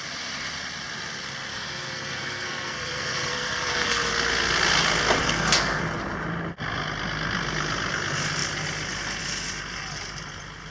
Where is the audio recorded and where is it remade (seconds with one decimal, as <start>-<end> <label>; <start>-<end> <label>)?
0.0-1.5 recorded; 1.5-4.1 remade; 4.1-5.2 recorded; 5.2-5.8 remade; 5.8-10.7 recorded